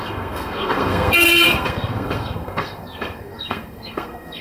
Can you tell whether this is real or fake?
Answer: fake